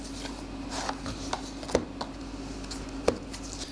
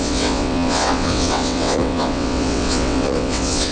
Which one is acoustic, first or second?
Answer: first